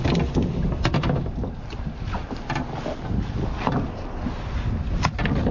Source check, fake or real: real